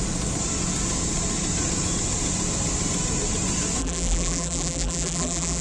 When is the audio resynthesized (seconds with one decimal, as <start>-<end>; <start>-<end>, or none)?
3.8-5.6